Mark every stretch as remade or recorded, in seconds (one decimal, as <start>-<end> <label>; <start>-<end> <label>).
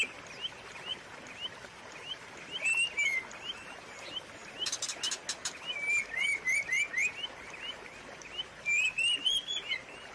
0.0-10.1 recorded